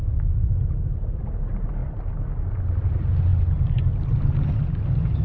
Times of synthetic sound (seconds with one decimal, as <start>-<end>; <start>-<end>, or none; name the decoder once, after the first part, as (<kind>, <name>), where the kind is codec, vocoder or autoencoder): none